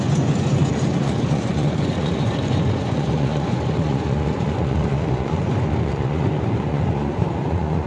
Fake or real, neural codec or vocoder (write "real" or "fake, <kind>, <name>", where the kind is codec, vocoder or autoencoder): fake, vocoder, Vocos